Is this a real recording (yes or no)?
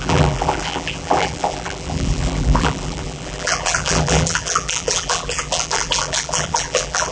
no